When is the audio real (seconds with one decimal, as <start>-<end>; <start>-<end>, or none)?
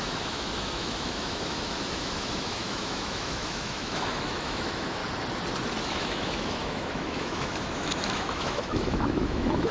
5.0-5.8